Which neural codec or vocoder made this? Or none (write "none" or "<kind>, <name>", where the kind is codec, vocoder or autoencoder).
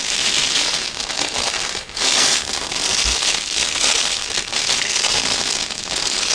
codec, SNAC